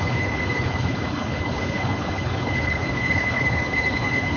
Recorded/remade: remade